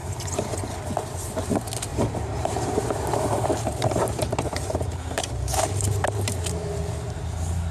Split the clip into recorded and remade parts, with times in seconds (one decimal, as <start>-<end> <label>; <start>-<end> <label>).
0.0-0.7 remade; 0.7-1.9 recorded; 1.9-6.4 remade; 6.4-7.7 recorded